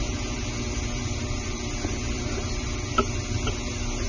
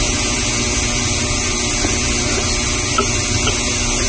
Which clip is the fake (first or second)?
first